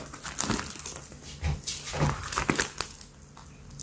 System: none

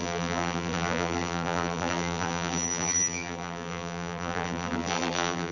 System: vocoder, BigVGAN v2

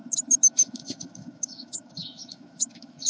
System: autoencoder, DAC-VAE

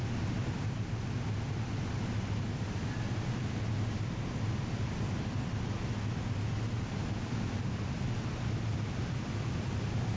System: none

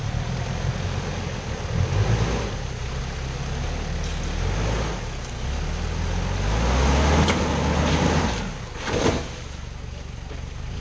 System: none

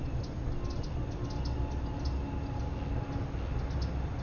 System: none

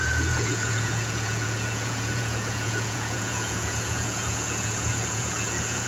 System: vocoder, Vocos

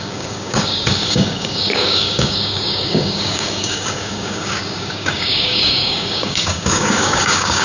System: codec, DAC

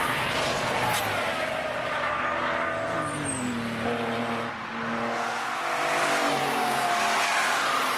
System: none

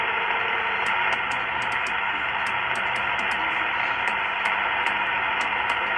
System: none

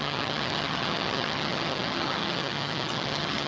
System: vocoder, HiFi-GAN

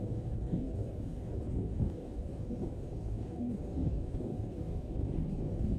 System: codec, DAC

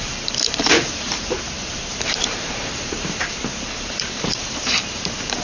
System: vocoder, BigVGAN v2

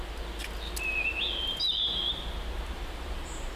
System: none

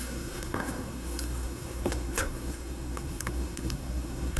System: codec, SNAC